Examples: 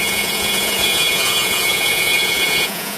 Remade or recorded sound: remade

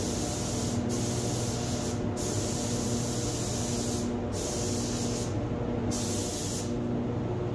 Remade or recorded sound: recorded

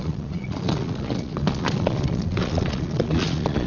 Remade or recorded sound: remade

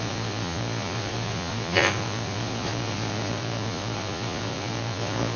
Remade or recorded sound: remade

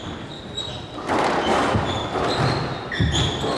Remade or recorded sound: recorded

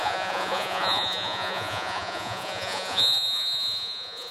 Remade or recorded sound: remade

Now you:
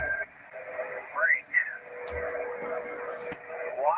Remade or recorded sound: recorded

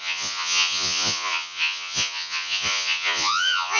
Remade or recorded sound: remade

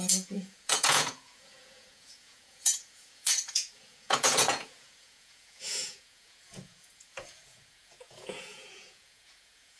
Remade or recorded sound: remade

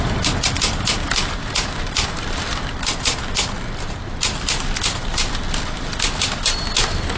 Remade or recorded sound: recorded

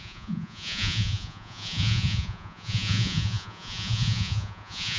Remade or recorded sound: remade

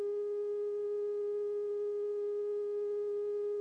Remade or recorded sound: recorded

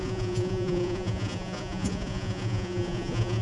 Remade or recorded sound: remade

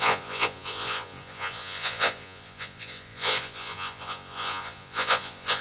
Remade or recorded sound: remade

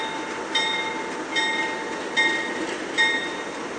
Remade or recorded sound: recorded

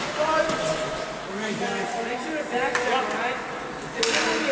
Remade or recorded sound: recorded